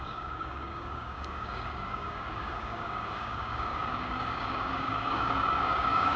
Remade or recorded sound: remade